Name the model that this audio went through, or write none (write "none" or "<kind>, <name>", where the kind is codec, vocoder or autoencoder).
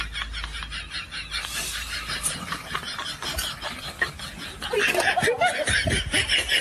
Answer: none